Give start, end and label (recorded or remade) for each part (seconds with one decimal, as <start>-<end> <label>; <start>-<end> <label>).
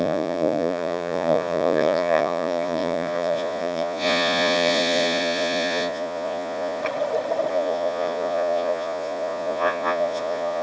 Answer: 0.0-6.8 remade; 6.8-7.5 recorded; 7.5-10.6 remade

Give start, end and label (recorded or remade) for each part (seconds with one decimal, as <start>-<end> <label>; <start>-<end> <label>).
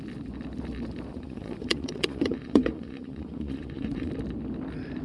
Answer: 0.0-1.1 recorded; 1.1-4.1 remade; 4.1-5.0 recorded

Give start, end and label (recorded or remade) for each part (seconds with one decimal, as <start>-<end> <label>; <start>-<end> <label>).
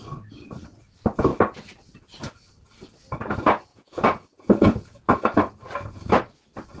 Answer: 0.0-3.7 recorded; 3.7-5.1 remade; 5.1-6.8 recorded